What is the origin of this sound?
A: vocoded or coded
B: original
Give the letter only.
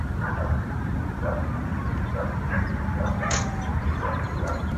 A